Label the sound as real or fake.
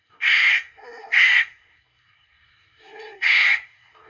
fake